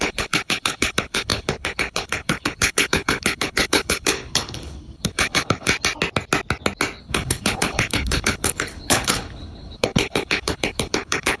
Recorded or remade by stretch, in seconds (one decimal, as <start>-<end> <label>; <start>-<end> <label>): 0.0-5.7 remade; 5.7-7.0 recorded; 7.0-11.4 remade